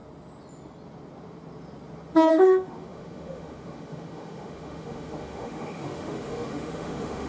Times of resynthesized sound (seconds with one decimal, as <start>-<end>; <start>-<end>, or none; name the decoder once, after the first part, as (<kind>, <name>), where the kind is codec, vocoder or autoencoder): 2.3-7.3 (autoencoder, DAC-VAE)